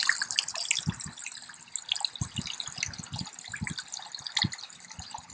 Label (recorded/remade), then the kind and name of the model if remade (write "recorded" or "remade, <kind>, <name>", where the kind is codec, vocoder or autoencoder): recorded